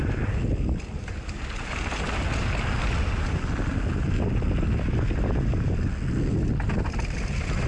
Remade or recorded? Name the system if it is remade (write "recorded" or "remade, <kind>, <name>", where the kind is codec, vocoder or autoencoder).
recorded